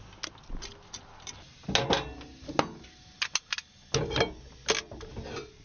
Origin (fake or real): real